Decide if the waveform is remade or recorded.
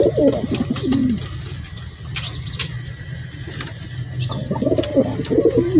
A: recorded